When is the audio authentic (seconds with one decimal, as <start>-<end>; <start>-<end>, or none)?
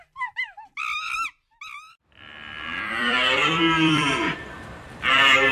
0.0-2.0